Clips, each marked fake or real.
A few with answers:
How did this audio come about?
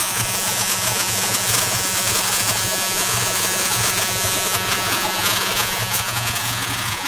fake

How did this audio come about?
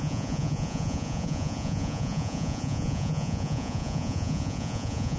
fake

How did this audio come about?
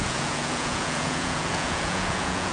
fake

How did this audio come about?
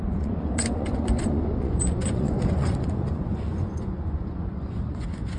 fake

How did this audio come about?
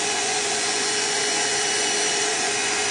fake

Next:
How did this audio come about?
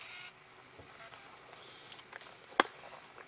real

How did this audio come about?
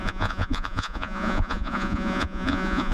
fake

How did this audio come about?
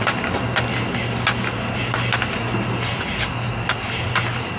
real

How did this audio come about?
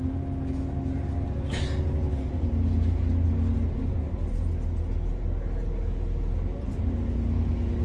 real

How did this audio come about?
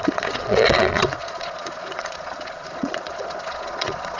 fake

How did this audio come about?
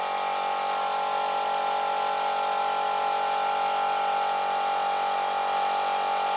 real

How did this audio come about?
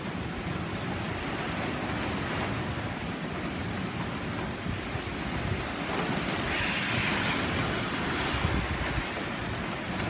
real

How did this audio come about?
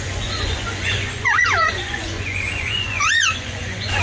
fake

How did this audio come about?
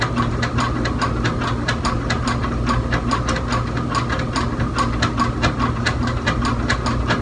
real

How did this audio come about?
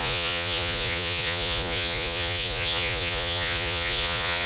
fake